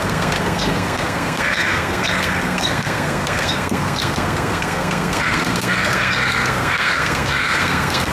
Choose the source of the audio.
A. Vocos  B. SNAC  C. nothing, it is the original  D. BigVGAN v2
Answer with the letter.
B